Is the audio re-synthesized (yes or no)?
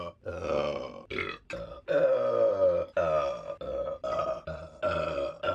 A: no